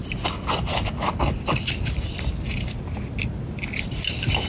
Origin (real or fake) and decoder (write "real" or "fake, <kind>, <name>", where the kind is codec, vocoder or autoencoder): real